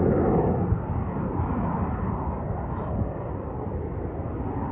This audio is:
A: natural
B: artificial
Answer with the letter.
A